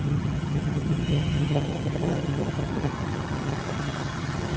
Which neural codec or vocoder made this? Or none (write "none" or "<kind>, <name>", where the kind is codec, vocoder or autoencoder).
vocoder, HiFi-GAN